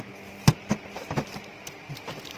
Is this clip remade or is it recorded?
recorded